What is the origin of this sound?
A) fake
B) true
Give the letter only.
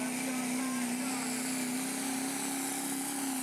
B